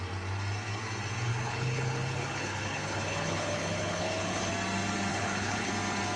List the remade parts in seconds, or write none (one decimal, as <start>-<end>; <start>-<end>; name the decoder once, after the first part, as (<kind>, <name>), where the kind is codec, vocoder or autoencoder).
1.3-4.5 (codec, HILCodec); 5.1-5.7